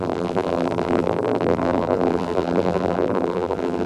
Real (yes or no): no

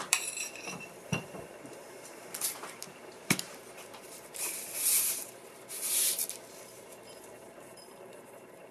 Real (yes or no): no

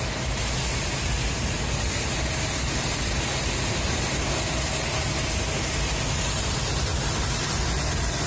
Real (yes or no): yes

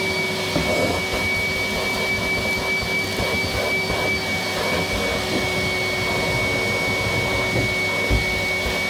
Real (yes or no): yes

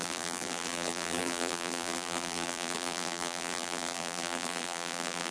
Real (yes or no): no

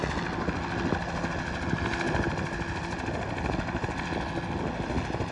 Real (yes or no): yes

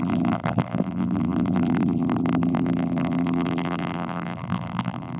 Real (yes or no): no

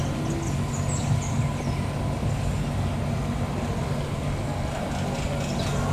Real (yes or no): yes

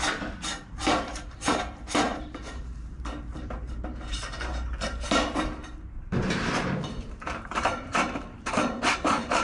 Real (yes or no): no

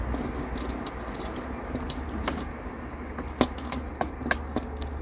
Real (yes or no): yes